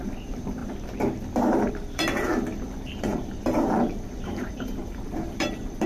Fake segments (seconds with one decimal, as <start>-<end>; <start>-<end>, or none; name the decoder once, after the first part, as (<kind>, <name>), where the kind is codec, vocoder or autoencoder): 0.0-0.6 (vocoder, BigVGAN v2); 1.7-5.9